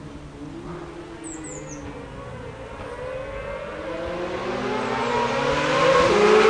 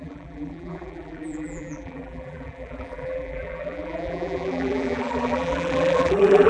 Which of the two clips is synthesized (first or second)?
second